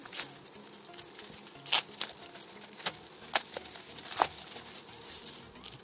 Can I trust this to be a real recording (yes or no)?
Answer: yes